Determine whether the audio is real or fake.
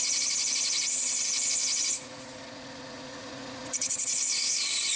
fake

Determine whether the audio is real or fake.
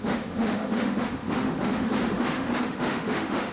fake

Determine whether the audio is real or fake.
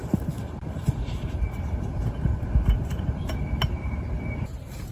fake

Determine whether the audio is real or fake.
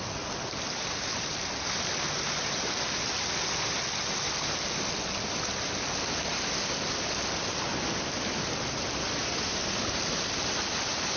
real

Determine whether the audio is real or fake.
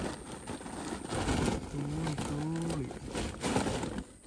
real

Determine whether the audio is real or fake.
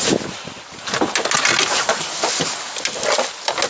real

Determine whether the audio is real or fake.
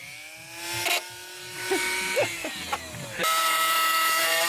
fake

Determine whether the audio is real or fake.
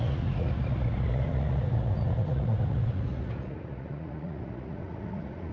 fake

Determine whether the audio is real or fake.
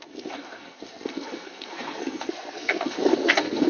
fake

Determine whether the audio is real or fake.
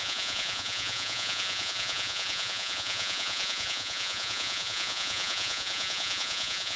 fake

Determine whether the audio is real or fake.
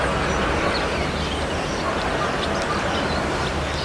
real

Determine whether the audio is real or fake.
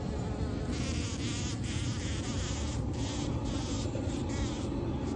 real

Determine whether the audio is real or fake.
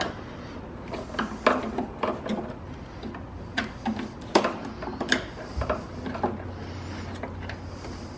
real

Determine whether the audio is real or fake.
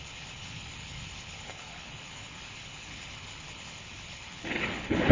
fake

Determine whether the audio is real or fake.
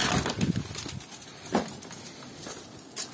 real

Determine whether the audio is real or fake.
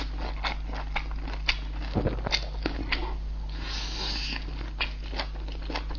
real